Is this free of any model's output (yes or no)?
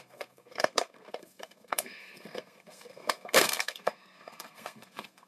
no